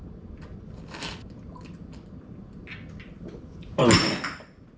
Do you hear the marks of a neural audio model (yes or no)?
no